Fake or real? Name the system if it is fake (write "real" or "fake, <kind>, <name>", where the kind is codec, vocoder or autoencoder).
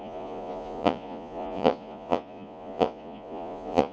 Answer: fake, vocoder, Vocos